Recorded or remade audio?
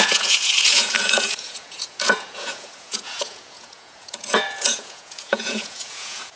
remade